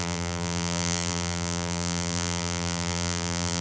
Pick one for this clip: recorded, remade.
remade